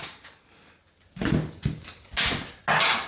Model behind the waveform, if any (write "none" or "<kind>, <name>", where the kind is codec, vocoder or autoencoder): none